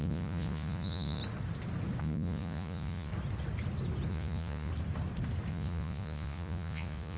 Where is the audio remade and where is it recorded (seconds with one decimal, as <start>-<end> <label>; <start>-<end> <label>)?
0.0-1.2 remade; 1.2-2.0 recorded; 2.0-3.1 remade; 3.1-4.1 recorded; 4.1-4.7 remade; 4.7-5.5 recorded; 5.5-7.2 remade